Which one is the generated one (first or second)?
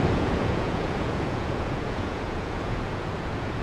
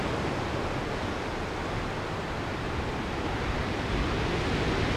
first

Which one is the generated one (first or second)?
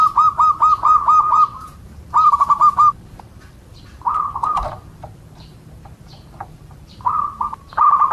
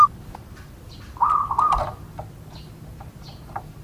first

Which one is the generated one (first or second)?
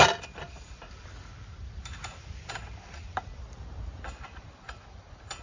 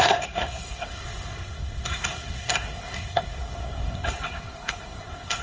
second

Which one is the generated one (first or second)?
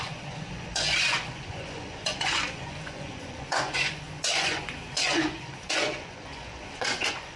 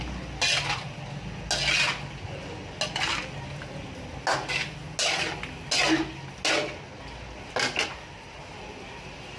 first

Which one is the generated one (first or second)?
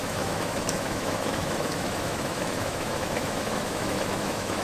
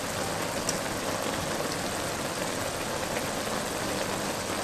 first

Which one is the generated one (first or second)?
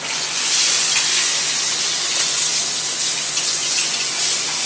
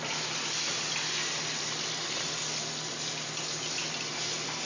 first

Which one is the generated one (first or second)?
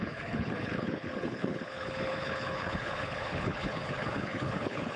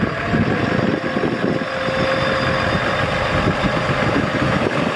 first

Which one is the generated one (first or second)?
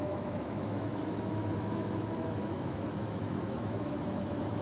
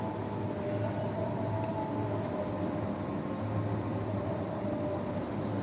first